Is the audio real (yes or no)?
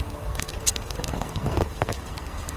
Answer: no